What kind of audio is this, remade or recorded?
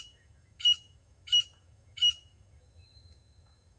remade